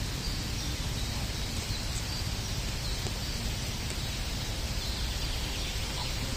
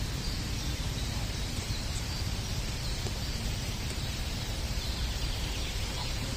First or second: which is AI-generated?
second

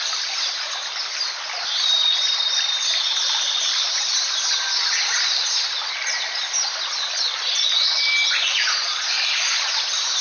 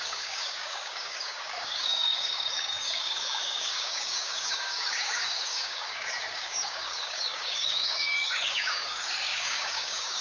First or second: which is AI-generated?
second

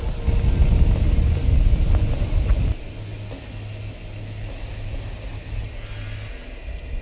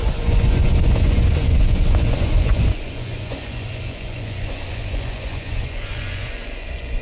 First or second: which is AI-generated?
second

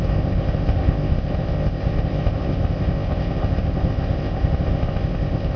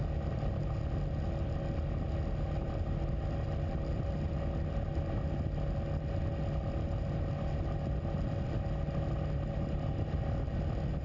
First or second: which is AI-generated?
first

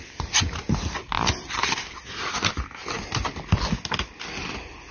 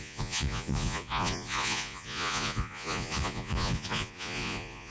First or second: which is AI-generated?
second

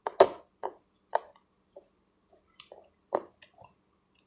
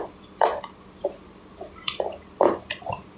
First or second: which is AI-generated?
second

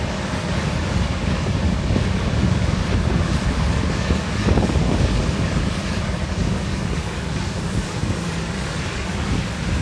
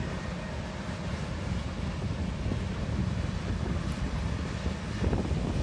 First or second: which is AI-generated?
first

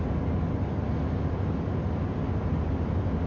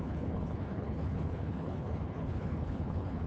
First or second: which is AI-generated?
second